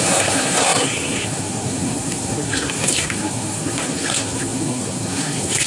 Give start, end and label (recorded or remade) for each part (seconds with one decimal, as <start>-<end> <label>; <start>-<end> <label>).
0.0-5.7 remade